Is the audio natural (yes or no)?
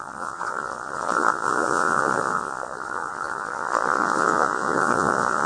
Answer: no